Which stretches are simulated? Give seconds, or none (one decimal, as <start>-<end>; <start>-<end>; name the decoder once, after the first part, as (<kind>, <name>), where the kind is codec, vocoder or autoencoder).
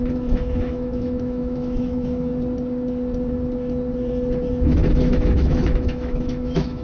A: 0.0-2.3 (autoencoder, DAC-VAE); 4.5-6.8